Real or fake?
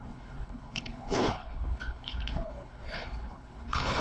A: fake